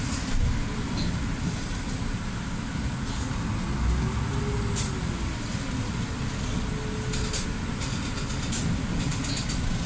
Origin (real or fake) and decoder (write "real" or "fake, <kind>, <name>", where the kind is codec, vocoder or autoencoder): real